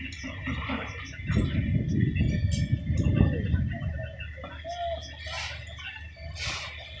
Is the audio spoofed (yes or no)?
no